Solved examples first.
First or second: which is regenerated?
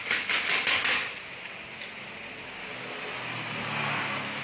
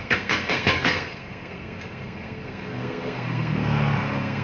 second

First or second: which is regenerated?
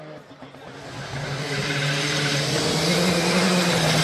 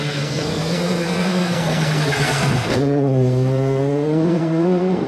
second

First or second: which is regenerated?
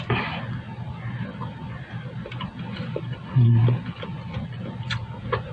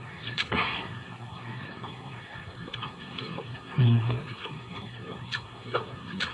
second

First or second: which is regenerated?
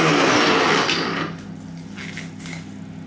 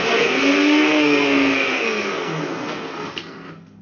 second